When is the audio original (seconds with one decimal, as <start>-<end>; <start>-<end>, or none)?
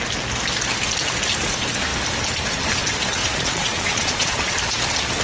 0.0-3.2; 4.5-5.2